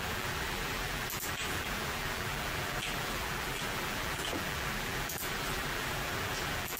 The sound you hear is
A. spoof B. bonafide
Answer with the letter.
A